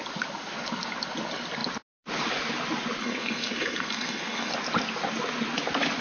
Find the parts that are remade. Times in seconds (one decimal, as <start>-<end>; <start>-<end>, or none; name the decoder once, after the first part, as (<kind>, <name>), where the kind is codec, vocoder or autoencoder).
3.0-4.5 (codec, SNAC)